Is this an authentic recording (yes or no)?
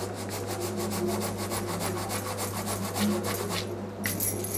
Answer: yes